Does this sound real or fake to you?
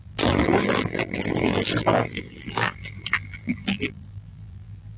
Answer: fake